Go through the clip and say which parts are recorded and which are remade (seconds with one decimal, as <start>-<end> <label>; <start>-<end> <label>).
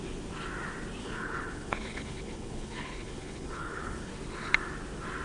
0.0-1.0 recorded; 1.0-4.1 remade; 4.1-5.2 recorded